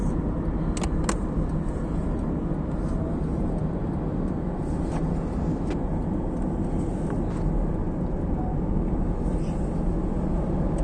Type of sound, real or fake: real